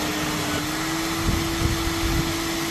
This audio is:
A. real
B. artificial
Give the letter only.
A